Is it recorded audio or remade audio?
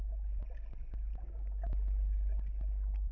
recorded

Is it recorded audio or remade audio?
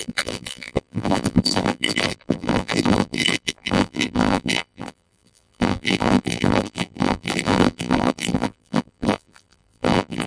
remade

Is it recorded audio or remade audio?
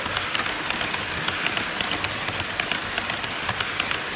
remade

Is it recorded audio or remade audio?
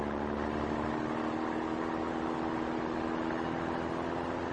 recorded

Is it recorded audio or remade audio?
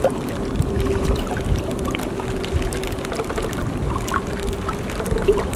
remade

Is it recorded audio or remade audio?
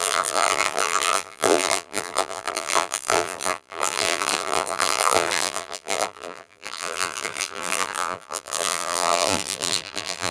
remade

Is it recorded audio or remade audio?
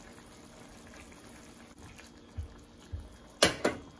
recorded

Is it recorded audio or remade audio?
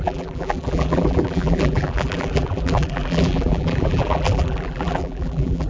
remade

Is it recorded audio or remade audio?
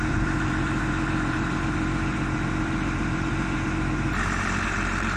remade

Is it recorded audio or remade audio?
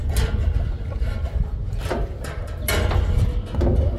recorded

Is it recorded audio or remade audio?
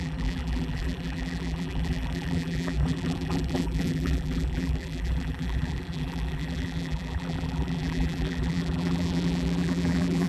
remade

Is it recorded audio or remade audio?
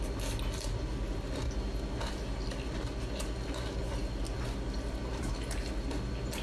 recorded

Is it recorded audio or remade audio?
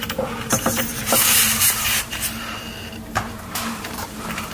remade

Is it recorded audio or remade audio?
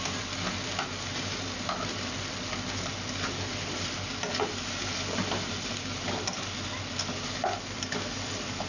recorded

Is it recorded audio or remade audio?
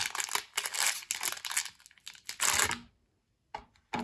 recorded